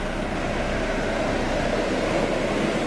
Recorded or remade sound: recorded